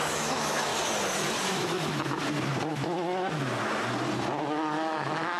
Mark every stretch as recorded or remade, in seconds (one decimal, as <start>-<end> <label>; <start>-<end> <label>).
0.0-0.7 remade; 0.7-1.5 recorded; 1.5-2.2 remade; 2.2-2.7 recorded; 2.7-3.4 remade; 3.4-4.4 recorded; 4.4-5.4 remade